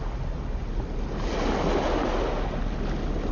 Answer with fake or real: real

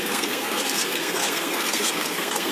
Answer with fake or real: fake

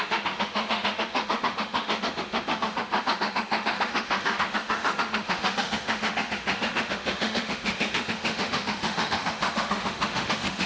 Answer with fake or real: fake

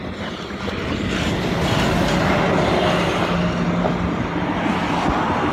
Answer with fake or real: real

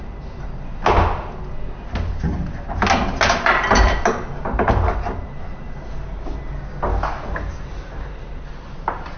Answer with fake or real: real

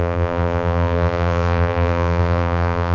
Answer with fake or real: fake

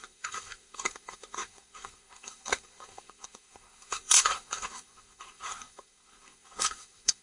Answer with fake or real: fake